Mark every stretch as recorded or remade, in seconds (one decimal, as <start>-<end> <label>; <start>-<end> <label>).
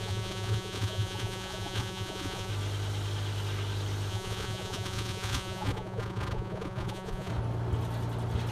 0.0-2.5 remade; 2.5-4.1 recorded; 4.1-7.3 remade; 7.3-8.5 recorded